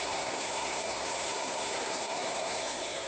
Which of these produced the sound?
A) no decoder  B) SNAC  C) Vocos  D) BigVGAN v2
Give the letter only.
B